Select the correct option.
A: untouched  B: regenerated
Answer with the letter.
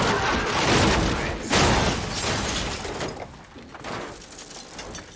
A